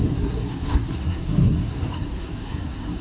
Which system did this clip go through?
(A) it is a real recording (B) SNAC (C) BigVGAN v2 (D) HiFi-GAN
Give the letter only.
B